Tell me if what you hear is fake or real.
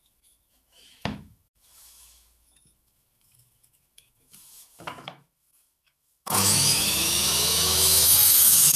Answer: fake